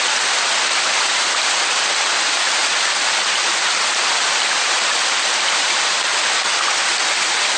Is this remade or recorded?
recorded